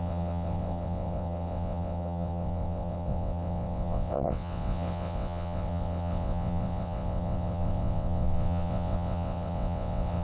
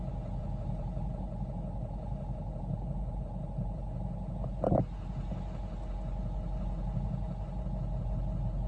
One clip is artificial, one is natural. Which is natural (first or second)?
second